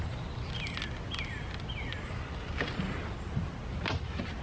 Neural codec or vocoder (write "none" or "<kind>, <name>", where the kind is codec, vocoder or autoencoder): none